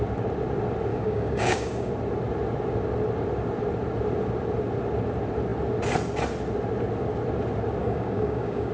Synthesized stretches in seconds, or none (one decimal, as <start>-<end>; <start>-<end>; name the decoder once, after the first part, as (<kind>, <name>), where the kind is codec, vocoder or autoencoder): 0.9-1.9 (codec, DAC); 7.8-8.7